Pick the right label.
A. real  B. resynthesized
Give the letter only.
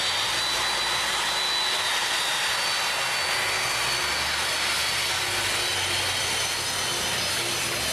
A